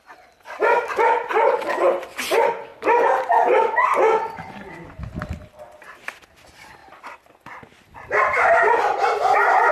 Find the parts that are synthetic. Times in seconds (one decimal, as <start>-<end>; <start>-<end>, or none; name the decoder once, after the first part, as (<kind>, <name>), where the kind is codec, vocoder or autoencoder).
none